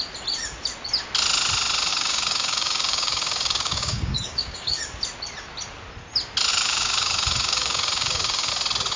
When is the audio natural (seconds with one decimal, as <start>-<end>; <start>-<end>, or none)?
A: 0.0-1.9; 4.8-6.5; 8.5-9.0